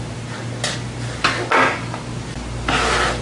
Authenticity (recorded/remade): recorded